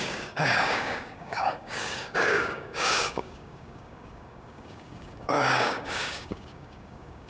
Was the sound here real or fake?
fake